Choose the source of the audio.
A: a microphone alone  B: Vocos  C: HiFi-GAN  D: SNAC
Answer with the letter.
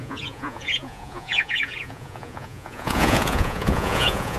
B